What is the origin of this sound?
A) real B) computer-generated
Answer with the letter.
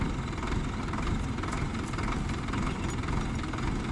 B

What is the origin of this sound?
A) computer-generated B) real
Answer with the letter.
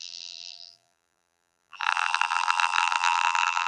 A